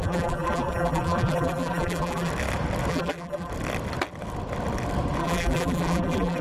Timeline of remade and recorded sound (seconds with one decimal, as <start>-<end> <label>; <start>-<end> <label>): 0.0-2.3 remade; 2.3-2.9 recorded; 2.9-3.5 remade; 3.5-5.2 recorded; 5.2-6.4 remade